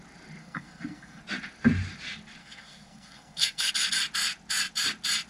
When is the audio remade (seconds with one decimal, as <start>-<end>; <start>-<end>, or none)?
0.4-1.2; 2.4-3.7